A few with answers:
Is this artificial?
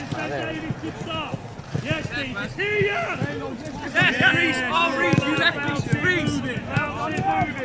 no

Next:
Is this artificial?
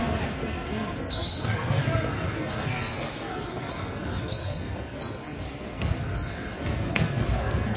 yes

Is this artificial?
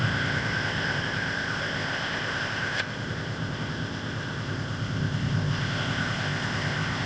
yes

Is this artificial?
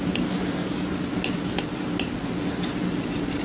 no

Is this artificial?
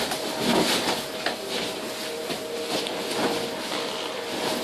no